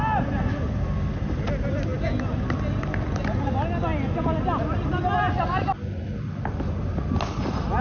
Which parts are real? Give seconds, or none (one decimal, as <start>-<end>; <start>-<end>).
0.0-7.8